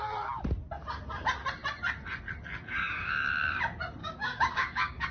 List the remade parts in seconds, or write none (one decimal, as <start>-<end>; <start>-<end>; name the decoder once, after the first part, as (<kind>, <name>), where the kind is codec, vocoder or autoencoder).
2.8-3.6 (codec, DAC); 4.0-5.1